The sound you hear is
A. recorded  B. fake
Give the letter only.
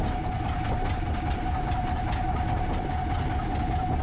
A